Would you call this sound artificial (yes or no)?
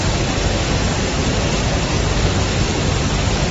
no